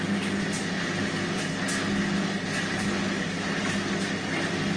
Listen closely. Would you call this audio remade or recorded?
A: recorded